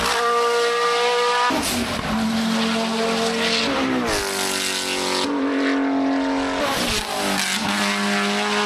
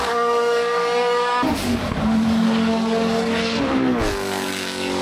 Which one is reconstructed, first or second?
second